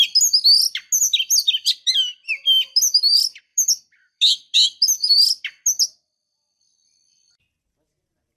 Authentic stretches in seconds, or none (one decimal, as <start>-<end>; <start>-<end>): 0.0-8.4